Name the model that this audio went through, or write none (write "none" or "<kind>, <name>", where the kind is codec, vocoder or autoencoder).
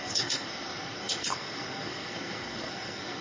codec, SNAC